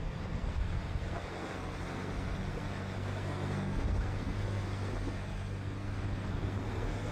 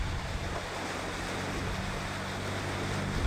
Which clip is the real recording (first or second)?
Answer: second